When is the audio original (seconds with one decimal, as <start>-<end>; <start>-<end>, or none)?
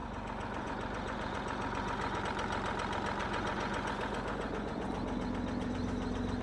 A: 2.2-3.2; 4.9-6.4